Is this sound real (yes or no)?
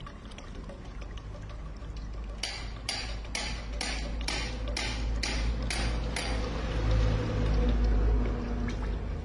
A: yes